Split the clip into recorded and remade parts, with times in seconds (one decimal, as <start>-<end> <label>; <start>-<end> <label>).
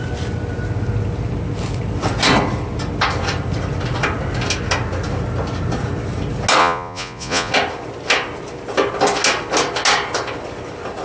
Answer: 0.0-6.6 recorded; 6.6-7.5 remade; 7.5-11.0 recorded